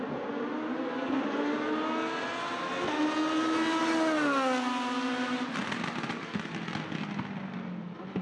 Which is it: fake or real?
real